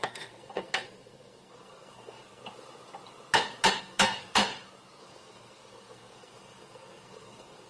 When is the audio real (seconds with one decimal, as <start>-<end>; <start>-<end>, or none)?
2.4-3.8; 4.4-5.0